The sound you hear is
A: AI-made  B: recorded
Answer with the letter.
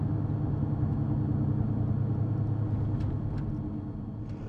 B